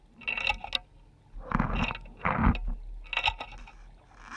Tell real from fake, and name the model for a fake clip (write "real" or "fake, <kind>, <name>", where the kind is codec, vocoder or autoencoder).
real